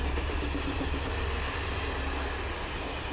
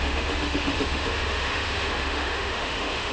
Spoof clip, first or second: second